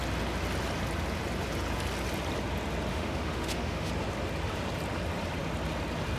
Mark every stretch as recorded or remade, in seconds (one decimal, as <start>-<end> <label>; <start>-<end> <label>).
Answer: 0.0-2.9 recorded; 2.9-3.9 remade; 3.9-6.2 recorded